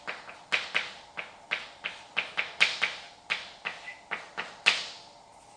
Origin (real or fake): real